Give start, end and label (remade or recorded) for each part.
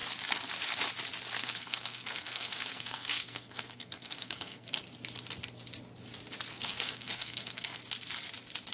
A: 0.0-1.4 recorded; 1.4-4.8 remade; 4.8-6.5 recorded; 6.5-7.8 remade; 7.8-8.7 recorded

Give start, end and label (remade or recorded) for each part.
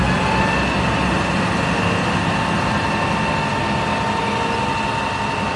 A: 0.0-5.6 recorded